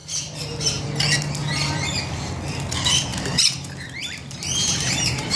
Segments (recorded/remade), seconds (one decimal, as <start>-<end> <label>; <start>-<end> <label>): 0.0-1.0 remade; 1.0-1.4 recorded; 1.4-2.3 remade; 2.3-3.1 recorded; 3.1-5.3 remade